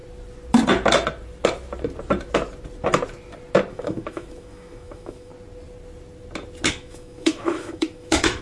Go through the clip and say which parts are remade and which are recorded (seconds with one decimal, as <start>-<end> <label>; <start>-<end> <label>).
0.0-3.7 recorded; 3.7-5.3 remade; 5.3-6.7 recorded; 6.7-8.4 remade